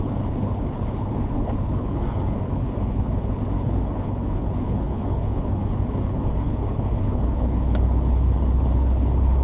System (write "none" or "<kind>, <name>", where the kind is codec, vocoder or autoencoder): codec, HILCodec